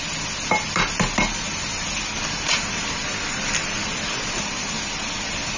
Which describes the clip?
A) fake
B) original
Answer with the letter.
B